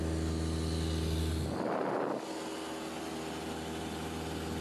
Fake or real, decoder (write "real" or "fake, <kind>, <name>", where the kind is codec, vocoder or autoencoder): real